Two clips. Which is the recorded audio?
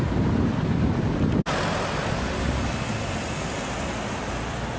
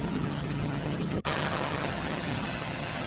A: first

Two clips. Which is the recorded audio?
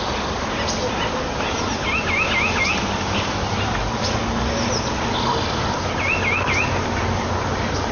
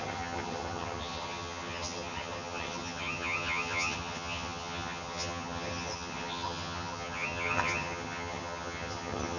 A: first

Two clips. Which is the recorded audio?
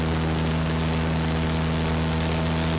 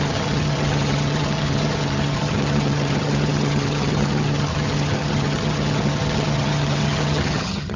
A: first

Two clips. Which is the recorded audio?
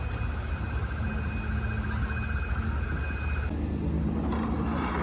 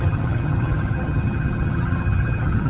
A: first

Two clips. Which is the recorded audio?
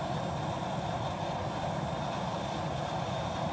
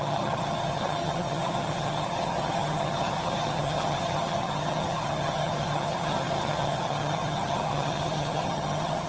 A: first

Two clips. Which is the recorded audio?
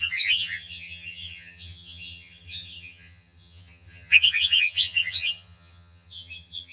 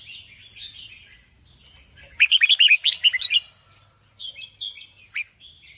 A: second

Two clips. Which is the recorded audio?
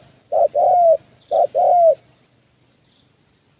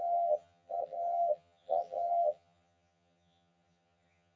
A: first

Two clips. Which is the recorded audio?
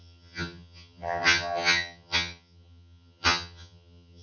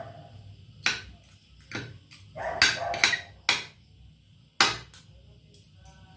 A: second